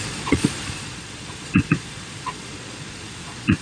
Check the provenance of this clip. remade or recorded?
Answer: remade